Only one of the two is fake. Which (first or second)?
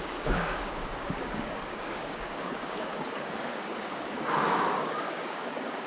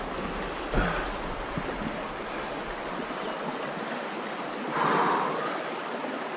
first